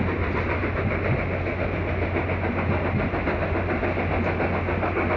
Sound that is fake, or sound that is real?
real